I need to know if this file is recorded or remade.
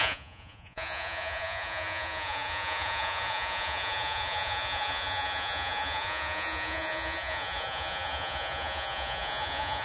remade